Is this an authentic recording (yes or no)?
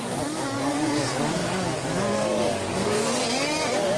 no